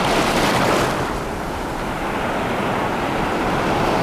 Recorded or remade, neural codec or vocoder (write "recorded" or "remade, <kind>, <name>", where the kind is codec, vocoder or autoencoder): recorded